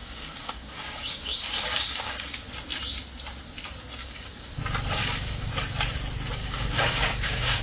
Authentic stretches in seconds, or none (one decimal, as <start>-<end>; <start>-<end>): 2.4-4.0; 4.6-5.0; 5.5-6.4